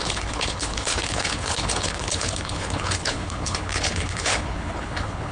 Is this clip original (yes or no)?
no